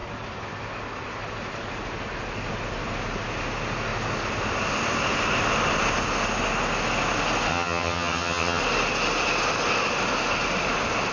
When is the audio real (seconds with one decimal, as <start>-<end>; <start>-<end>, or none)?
0.0-7.5; 8.6-11.1